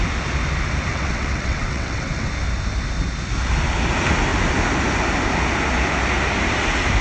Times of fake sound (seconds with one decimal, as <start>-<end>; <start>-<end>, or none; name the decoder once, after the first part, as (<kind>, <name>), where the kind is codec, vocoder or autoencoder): 0.9-2.3 (vocoder, WaveNeXt)